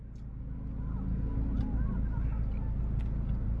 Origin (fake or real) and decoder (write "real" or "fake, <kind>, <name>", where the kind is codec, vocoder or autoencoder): real